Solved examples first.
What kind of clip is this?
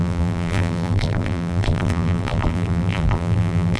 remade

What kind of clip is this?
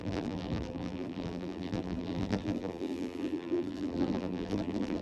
remade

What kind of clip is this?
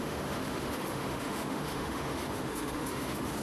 remade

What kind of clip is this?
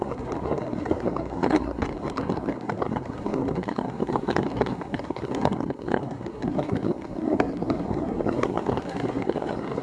remade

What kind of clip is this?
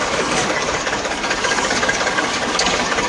remade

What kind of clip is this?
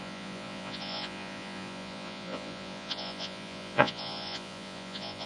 remade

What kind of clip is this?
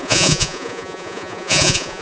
remade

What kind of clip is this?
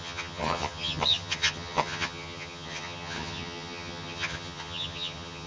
remade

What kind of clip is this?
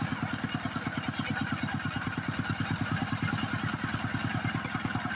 recorded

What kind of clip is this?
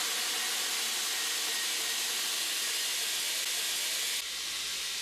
recorded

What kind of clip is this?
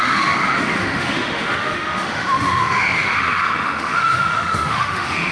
remade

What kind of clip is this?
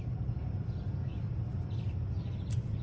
recorded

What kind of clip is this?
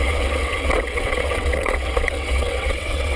remade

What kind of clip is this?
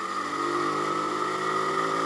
recorded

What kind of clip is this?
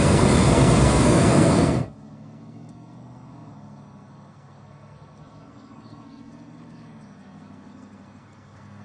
remade